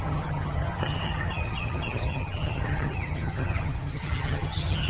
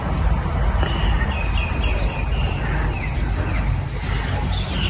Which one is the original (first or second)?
second